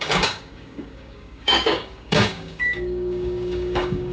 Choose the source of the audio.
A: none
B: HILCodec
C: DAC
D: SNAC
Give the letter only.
C